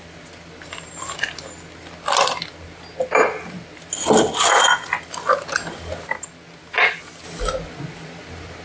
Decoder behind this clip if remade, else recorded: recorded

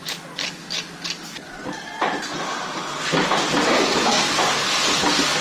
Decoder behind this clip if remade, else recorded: recorded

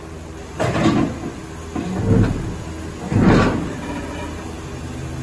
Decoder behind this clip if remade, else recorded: recorded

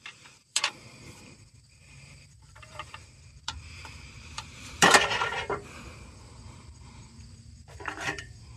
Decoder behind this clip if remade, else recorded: remade, vocoder, BigVGAN v2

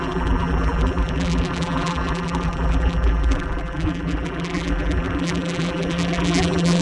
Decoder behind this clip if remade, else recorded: remade, vocoder, BigVGAN v2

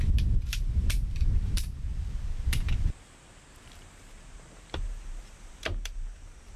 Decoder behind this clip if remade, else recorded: remade, vocoder, BigVGAN v2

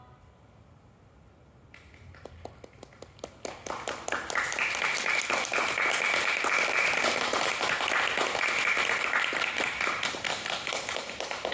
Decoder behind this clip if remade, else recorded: recorded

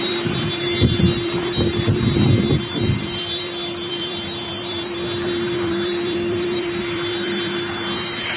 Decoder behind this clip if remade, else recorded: remade, vocoder, BigVGAN v2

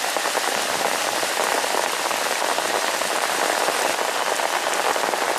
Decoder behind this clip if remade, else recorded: recorded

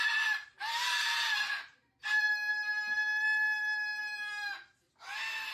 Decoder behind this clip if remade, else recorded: recorded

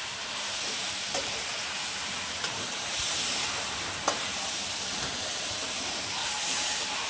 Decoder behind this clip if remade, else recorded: remade, vocoder, BigVGAN v2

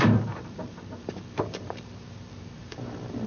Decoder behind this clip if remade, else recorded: remade, vocoder, BigVGAN v2